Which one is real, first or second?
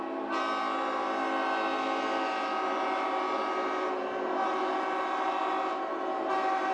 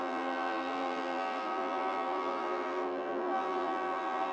first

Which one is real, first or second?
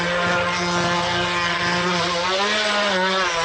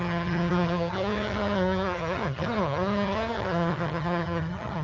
first